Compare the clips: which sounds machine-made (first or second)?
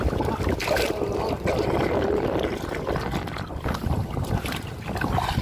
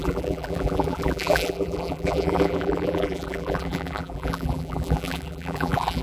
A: second